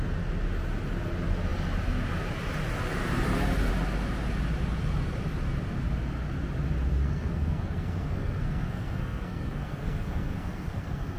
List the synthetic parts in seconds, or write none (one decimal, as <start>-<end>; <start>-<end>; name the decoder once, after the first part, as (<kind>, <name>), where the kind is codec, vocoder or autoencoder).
6.9-11.2 (codec, SNAC)